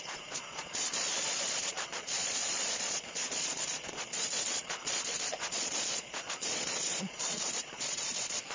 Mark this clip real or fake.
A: fake